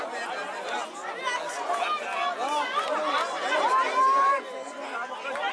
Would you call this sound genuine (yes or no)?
yes